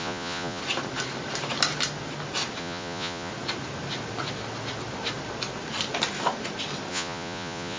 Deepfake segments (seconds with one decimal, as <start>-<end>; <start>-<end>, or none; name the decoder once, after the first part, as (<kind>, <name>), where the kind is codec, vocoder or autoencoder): 0.0-0.6 (vocoder, Vocos); 2.6-3.3; 6.9-7.8